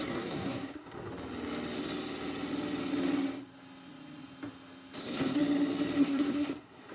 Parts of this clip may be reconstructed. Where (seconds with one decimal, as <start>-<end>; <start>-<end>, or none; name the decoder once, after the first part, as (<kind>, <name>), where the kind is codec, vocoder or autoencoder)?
0.0-1.1 (codec, SNAC); 5.0-5.4; 6.0-6.9